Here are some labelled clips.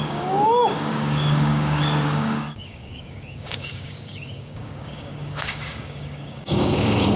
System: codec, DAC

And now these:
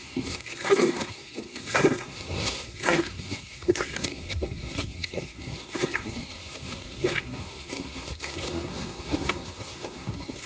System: codec, SNAC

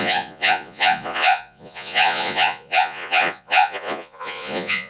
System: vocoder, Vocos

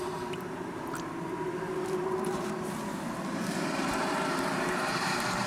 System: vocoder, BigVGAN v2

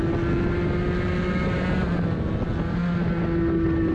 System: none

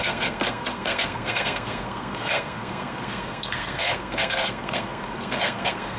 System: codec, SNAC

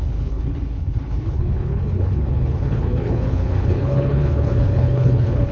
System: codec, HILCodec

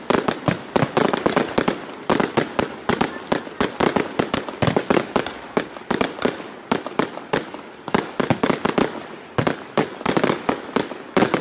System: none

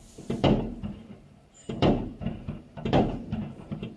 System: vocoder, BigVGAN v2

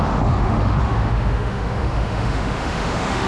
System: autoencoder, DAC-VAE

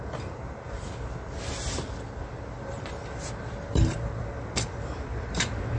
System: none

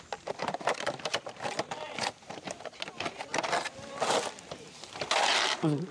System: none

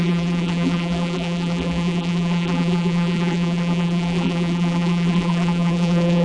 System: vocoder, BigVGAN v2